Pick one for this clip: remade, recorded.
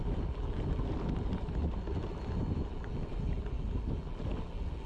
recorded